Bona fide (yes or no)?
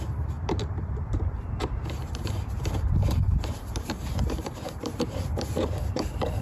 no